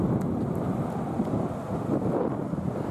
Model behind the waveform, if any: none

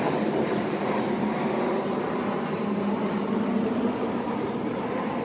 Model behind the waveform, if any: vocoder, BigVGAN v2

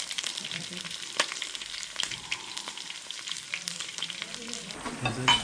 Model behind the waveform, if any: vocoder, BigVGAN v2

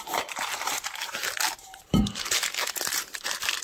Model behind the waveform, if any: vocoder, BigVGAN v2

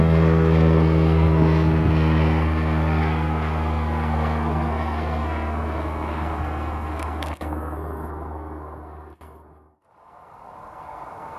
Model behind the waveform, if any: codec, SNAC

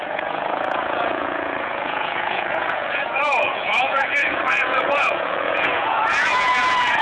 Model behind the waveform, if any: vocoder, Vocos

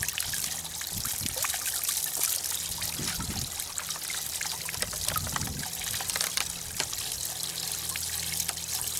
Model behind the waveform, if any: none